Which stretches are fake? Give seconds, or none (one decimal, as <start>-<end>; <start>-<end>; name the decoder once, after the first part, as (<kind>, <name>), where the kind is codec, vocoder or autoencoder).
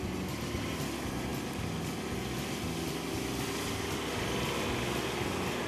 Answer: none